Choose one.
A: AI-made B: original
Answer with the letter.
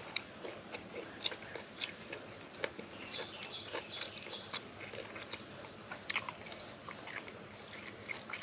B